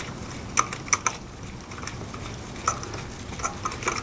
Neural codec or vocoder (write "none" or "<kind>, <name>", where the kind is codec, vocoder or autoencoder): none